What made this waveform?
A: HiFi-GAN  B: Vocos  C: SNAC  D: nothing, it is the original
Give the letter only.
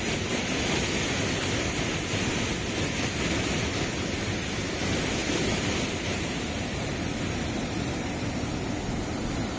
D